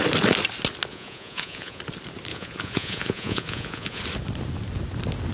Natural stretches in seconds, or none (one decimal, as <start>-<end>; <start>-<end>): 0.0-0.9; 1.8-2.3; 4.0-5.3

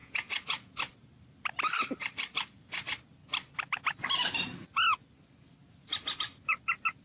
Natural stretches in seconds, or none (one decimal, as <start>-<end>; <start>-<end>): 0.8-7.0

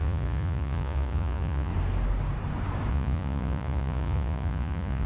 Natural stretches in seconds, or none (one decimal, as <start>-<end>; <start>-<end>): 1.7-2.9

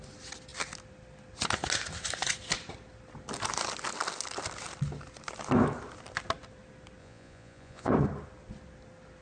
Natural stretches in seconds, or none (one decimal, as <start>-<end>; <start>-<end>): 0.0-7.0; 7.9-9.2

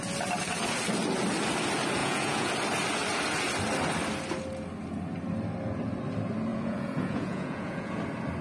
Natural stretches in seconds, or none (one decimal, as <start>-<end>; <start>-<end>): 0.0-2.0; 2.5-6.5; 8.0-8.4

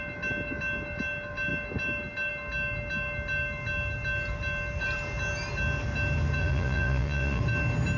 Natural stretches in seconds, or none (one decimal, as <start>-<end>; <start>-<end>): 0.0-6.4; 7.4-8.0

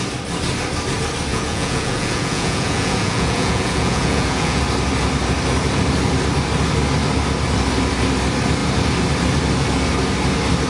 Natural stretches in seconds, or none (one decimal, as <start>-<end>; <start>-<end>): 0.0-1.3; 4.6-10.7